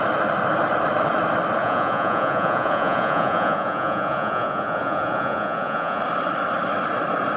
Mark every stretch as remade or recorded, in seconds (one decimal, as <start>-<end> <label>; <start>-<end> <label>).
0.0-1.6 recorded; 1.6-6.0 remade; 6.0-7.4 recorded